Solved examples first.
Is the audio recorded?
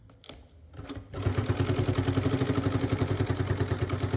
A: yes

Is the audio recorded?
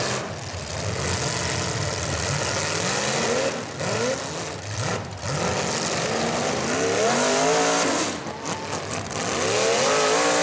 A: yes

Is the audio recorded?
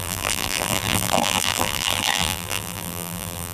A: no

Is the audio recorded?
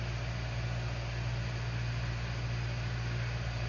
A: yes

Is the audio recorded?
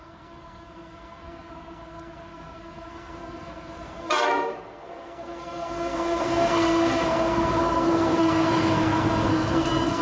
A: no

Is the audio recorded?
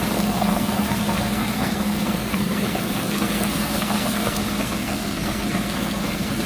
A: no